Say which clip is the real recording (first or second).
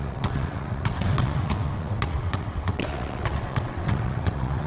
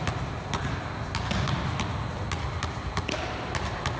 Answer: second